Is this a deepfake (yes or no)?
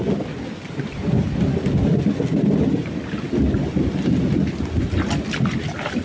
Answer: no